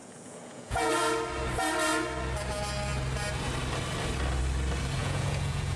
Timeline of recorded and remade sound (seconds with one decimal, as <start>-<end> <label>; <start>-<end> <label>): 0.0-0.9 remade; 0.9-5.0 recorded; 5.0-5.8 remade